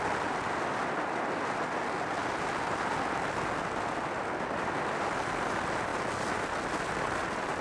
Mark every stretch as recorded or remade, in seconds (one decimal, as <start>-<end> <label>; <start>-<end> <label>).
0.0-7.6 recorded